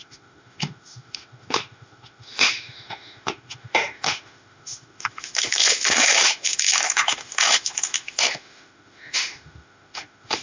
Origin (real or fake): fake